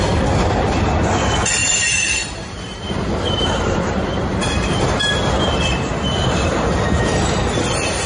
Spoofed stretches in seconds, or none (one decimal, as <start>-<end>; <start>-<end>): 1.6-4.9